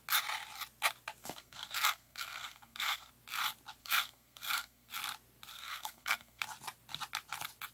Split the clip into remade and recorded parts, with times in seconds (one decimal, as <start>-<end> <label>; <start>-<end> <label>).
0.0-1.2 recorded; 1.2-3.1 remade; 3.1-3.8 recorded; 3.8-4.9 remade; 4.9-5.5 recorded; 5.5-6.4 remade; 6.4-7.7 recorded